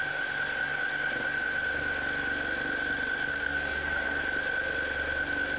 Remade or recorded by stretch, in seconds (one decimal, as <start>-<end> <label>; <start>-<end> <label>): 0.0-3.3 recorded; 3.3-4.2 remade; 4.2-5.6 recorded